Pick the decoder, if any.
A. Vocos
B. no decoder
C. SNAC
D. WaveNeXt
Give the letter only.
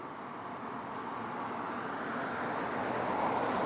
B